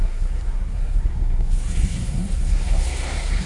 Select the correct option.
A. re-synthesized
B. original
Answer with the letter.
A